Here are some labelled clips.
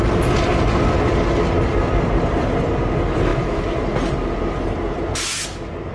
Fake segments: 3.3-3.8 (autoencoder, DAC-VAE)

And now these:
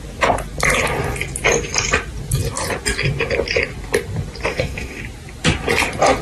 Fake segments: 4.5-5.0 (autoencoder, DAC-VAE)

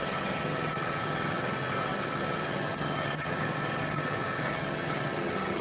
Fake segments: 0.0-5.6 (vocoder, HiFi-GAN)

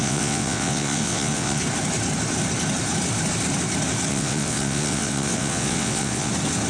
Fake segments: 0.0-1.6 (vocoder, WaveNeXt); 4.1-6.3

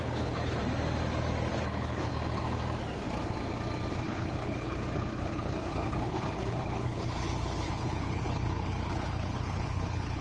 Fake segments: 0.0-0.6 (codec, HILCodec); 1.5-2.1; 3.9-10.2

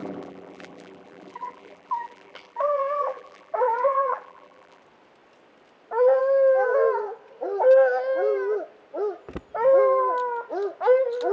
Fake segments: 0.0-4.8 (vocoder, BigVGAN v2)